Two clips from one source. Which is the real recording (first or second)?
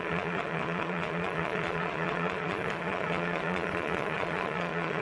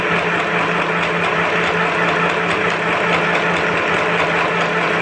second